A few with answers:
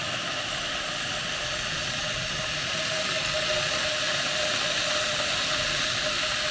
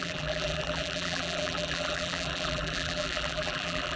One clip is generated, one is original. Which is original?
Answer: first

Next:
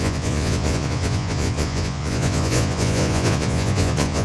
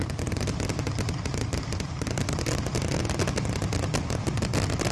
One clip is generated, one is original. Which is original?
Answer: second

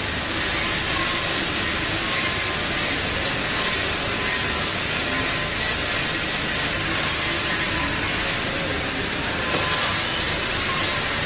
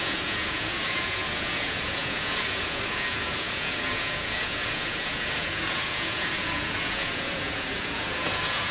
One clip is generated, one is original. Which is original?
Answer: first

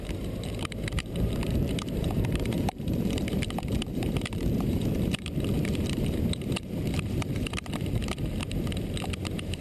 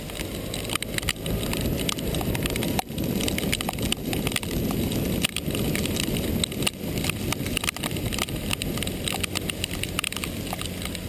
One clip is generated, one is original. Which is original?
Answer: second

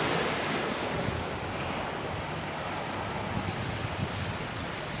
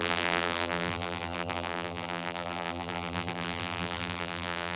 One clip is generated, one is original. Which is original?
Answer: first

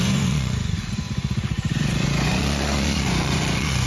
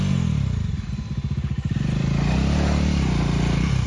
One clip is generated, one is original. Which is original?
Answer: second